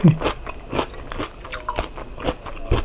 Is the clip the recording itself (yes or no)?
yes